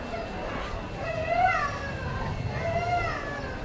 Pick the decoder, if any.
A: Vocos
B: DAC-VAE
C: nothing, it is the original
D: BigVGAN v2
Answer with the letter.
C